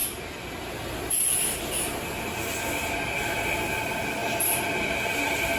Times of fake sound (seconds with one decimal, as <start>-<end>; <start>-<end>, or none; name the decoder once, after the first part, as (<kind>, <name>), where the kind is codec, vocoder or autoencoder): none